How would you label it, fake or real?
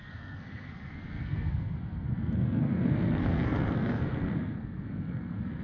fake